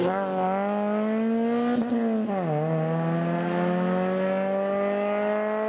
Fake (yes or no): no